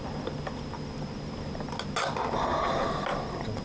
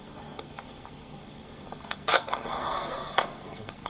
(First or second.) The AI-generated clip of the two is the second